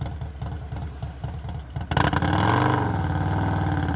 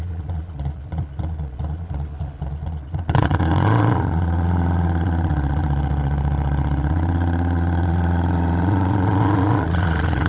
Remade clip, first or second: second